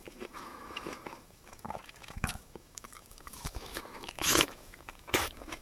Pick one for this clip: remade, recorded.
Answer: remade